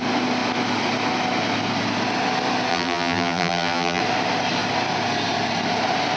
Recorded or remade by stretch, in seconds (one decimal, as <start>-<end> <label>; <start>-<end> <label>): 0.0-2.7 recorded; 2.7-4.0 remade; 4.0-6.2 recorded